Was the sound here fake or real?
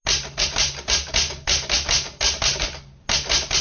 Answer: real